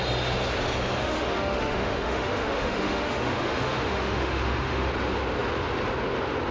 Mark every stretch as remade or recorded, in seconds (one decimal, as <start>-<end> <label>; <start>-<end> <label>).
0.0-1.0 recorded; 1.0-4.9 remade; 4.9-6.5 recorded